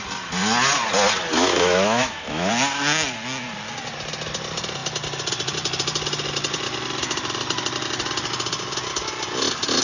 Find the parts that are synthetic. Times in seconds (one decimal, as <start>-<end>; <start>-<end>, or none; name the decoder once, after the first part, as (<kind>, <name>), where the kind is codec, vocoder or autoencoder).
1.3-2.5 (autoencoder, DAC-VAE)